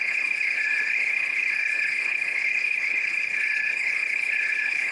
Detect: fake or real fake